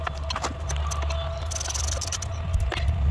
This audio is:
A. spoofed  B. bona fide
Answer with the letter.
B